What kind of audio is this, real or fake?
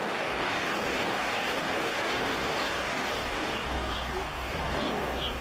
fake